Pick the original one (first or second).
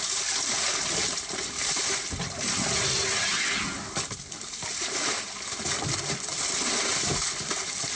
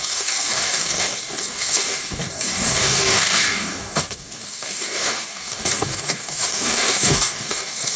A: first